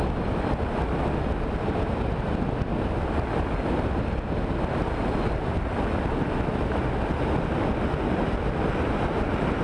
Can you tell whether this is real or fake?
real